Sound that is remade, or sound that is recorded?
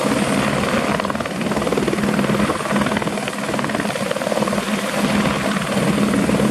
recorded